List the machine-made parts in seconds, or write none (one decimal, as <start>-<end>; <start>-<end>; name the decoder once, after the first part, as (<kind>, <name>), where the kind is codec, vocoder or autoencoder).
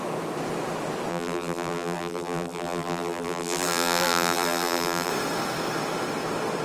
1.1-5.1 (vocoder, BigVGAN v2)